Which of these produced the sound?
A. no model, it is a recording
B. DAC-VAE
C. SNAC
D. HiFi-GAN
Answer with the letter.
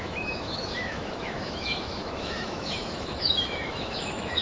B